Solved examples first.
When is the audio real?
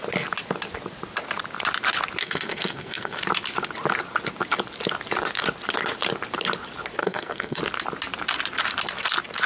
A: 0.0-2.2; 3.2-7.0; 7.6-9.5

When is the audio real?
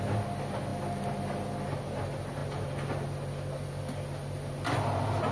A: 0.0-5.3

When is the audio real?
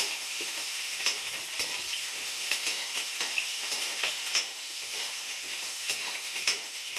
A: 1.3-2.0